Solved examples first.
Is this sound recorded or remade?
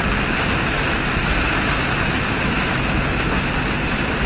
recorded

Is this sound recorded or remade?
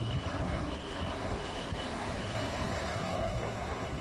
remade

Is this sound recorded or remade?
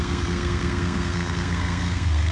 remade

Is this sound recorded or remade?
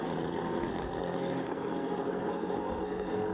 remade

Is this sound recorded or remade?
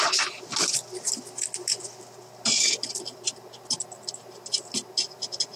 recorded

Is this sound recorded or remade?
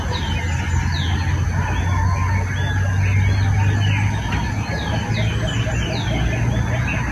recorded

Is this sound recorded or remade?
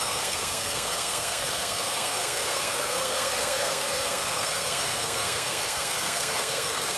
remade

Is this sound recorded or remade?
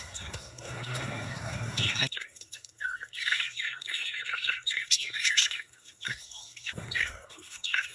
remade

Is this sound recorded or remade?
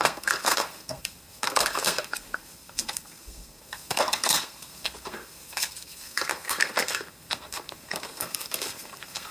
remade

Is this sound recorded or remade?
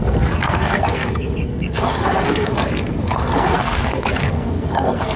remade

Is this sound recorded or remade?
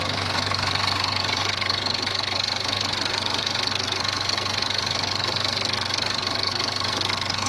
remade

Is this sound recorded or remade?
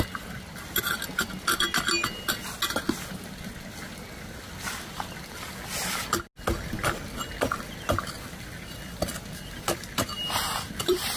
recorded